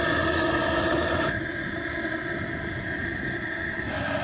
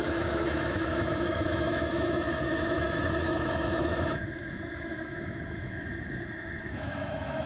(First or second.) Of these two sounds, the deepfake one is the second